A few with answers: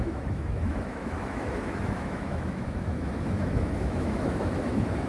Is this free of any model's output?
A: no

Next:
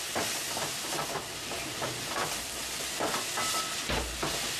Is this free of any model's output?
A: yes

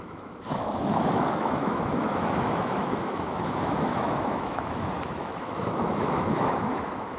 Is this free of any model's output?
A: no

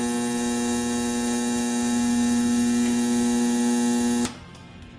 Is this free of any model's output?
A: yes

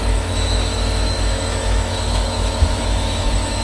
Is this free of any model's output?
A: no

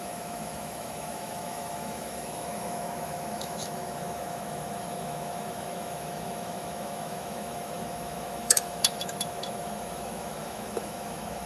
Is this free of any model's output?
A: no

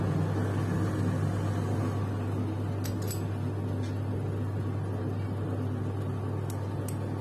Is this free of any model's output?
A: yes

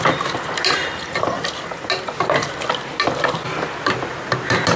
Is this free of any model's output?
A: yes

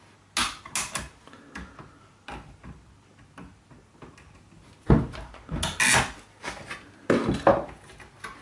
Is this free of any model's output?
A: yes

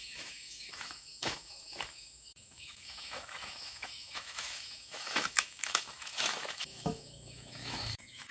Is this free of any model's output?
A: no